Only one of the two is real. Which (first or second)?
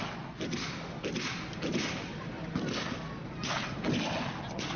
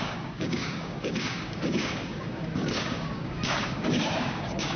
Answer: first